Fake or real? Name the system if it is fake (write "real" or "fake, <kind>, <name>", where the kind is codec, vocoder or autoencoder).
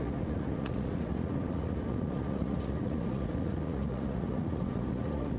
fake, vocoder, Vocos